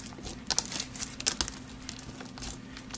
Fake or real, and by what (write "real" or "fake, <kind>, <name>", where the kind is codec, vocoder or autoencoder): real